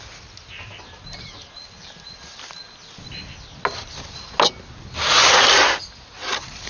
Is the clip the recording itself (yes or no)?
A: yes